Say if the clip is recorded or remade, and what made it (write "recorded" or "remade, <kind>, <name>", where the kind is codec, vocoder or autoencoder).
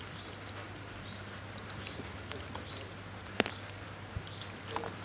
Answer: recorded